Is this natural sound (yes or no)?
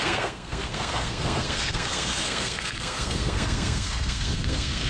no